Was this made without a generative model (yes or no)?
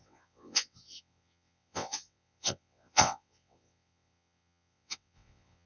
no